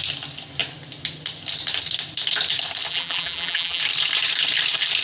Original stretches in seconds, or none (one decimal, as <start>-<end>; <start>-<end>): 0.0-2.9; 3.8-5.0

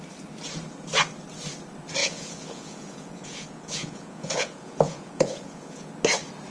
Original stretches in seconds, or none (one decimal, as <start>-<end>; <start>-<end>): 0.0-2.0; 5.9-6.5

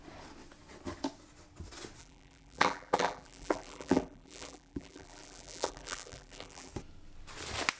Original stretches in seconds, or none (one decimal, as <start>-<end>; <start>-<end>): 0.0-2.0; 6.7-7.8

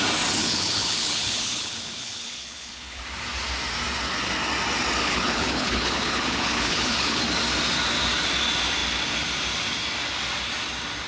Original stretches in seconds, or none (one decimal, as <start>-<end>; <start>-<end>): 0.0-0.4; 3.0-5.0; 7.2-11.1

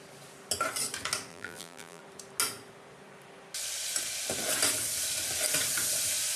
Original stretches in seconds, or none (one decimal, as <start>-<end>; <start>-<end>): 0.0-1.3; 2.0-6.4

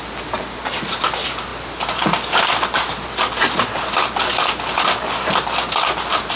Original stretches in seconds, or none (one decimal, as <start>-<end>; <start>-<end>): 0.0-6.4